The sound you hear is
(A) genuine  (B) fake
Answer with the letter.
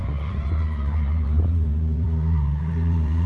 B